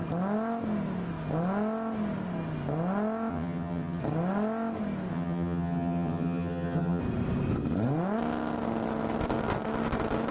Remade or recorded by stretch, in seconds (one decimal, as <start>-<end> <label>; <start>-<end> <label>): 0.0-3.3 recorded; 3.3-4.0 remade; 4.0-5.1 recorded; 5.1-7.0 remade; 7.0-10.3 recorded